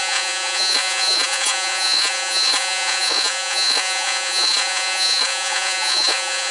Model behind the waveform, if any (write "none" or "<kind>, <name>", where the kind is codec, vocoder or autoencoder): vocoder, Vocos